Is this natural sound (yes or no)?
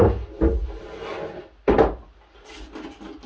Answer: yes